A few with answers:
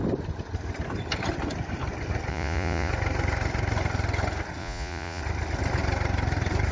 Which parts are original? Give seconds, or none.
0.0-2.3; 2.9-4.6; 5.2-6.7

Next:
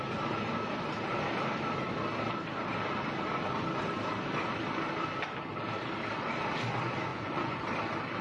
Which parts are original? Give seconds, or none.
0.0-7.1; 7.6-8.2